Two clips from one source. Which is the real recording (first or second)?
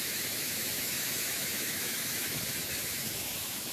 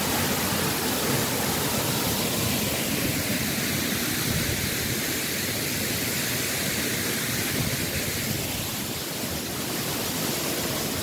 second